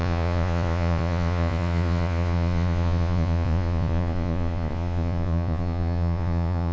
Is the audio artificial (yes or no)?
yes